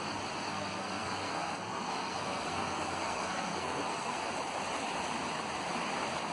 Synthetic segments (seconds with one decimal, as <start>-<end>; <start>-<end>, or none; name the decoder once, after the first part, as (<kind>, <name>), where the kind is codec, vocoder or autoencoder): 0.5-4.3 (codec, SNAC)